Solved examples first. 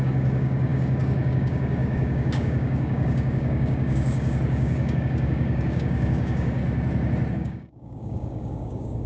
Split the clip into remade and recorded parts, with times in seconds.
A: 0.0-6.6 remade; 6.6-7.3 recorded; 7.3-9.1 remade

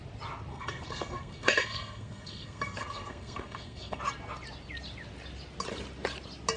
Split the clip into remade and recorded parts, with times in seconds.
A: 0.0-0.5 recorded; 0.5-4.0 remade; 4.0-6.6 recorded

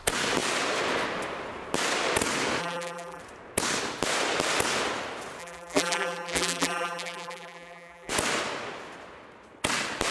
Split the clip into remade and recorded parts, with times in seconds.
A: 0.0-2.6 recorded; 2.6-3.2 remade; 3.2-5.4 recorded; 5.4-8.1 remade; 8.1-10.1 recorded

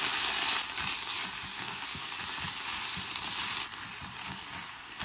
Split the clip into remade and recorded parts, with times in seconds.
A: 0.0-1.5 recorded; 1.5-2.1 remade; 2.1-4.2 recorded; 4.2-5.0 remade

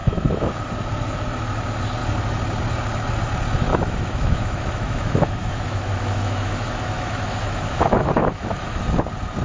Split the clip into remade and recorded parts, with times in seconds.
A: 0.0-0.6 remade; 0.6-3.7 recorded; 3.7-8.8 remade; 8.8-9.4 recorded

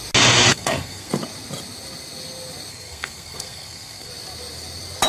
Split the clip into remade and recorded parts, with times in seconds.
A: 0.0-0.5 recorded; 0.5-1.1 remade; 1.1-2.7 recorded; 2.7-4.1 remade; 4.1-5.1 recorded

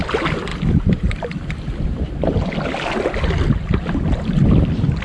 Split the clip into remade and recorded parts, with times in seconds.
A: 0.0-5.0 recorded